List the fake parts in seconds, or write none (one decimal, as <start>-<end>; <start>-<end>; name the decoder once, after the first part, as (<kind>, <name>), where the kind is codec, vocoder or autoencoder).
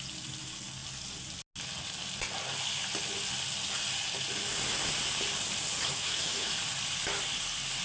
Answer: 5.9-6.5 (autoencoder, DAC-VAE)